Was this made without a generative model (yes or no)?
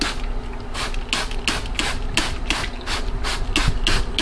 yes